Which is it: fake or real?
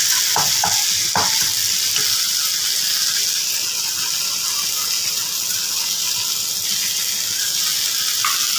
real